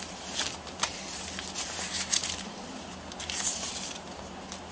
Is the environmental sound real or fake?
real